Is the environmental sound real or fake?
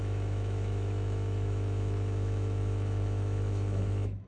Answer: fake